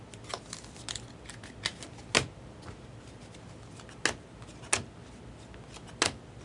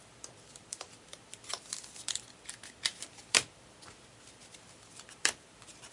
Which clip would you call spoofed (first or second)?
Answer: second